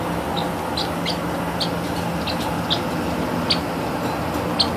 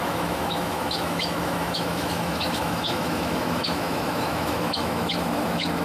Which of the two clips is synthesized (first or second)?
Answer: second